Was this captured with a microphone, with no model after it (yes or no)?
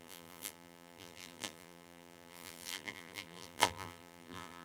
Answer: no